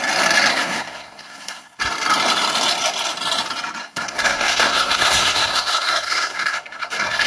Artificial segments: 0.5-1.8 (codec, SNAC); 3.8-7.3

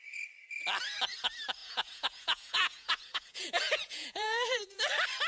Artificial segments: 1.6-4.8 (vocoder, Vocos)